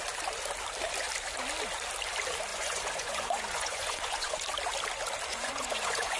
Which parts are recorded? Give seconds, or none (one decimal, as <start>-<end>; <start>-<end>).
0.0-2.5; 4.3-5.3